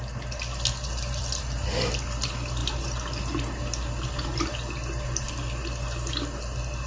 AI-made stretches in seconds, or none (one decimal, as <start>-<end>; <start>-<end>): none